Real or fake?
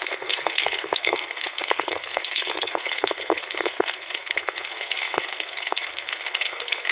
fake